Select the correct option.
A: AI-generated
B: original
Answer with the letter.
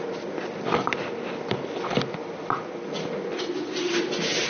B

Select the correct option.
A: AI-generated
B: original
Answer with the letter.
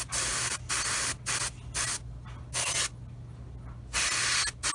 B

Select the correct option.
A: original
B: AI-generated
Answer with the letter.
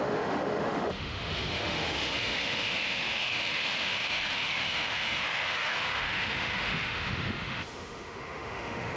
B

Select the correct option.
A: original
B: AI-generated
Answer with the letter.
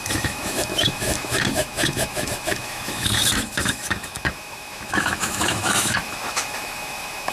B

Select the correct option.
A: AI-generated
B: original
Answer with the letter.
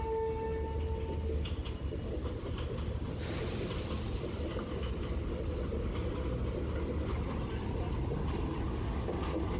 B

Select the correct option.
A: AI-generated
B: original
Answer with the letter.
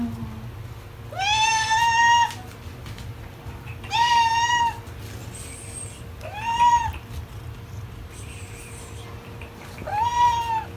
B